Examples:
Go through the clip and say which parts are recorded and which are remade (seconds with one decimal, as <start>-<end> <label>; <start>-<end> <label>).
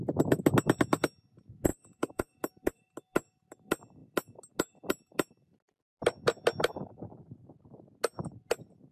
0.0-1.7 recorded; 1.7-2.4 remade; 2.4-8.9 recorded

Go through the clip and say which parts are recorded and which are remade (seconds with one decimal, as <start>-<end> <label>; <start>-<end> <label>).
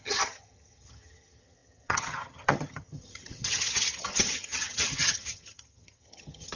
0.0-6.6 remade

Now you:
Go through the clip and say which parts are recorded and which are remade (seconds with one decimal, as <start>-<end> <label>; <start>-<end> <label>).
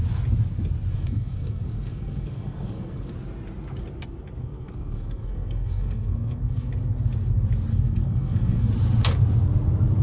0.0-0.9 recorded; 0.9-3.1 remade; 3.1-4.4 recorded; 4.4-6.7 remade; 6.7-7.7 recorded; 7.7-8.7 remade; 8.7-10.0 recorded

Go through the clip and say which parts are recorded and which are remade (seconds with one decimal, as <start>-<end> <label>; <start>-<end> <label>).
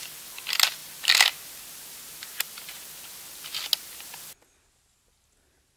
0.0-5.8 recorded